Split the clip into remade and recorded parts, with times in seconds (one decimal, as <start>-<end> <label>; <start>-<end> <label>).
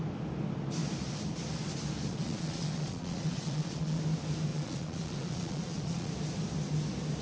0.0-2.1 recorded; 2.1-4.0 remade; 4.0-4.5 recorded; 4.5-6.1 remade; 6.1-7.2 recorded